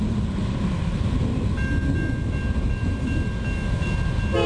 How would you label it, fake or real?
real